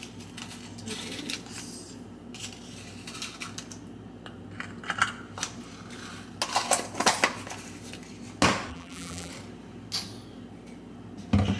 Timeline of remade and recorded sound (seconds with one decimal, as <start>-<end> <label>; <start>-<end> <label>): 0.0-8.7 recorded; 8.7-9.3 remade; 9.3-11.6 recorded